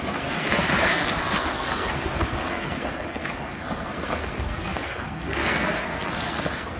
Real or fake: fake